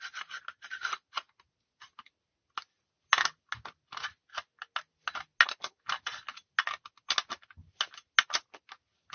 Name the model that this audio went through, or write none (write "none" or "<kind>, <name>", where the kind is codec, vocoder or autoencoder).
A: none